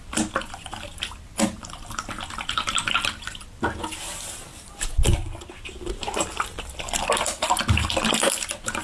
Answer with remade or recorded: recorded